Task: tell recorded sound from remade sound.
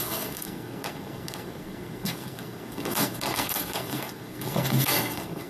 remade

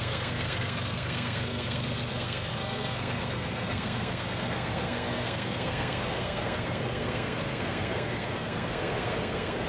remade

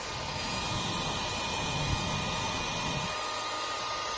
recorded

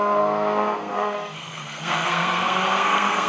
remade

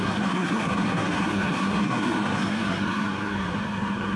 remade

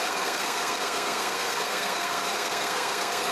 remade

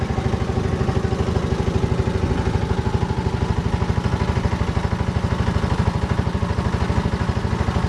recorded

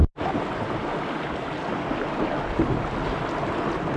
recorded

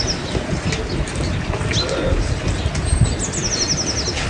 recorded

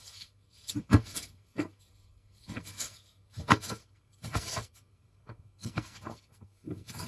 remade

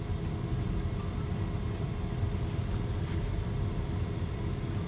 recorded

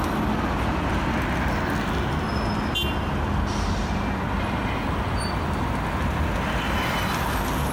recorded